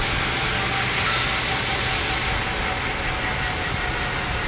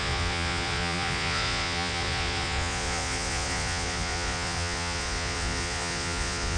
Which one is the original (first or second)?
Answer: first